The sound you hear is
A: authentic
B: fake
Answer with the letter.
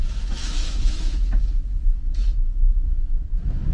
B